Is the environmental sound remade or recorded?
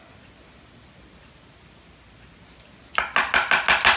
recorded